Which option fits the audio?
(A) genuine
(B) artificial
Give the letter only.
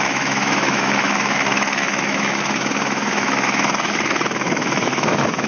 B